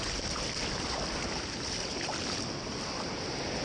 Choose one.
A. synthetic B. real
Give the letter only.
B